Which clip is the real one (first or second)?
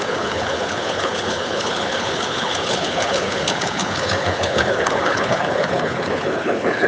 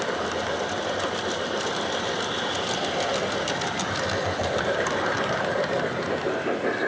second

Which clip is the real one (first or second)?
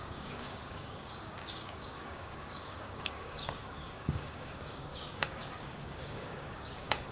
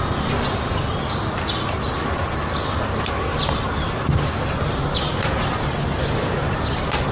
second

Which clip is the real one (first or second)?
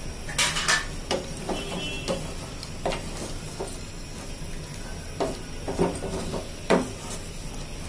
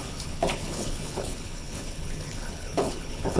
first